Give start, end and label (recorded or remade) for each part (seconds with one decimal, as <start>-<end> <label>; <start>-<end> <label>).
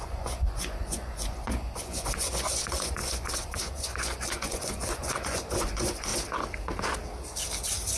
0.0-6.1 remade; 6.1-8.0 recorded